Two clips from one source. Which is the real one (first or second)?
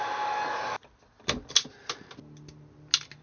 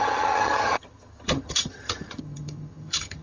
first